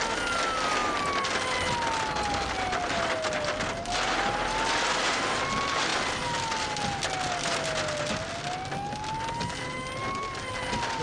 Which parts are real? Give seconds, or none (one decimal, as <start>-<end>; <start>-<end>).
0.0-11.0